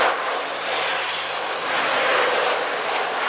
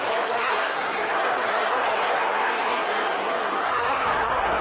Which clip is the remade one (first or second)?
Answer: second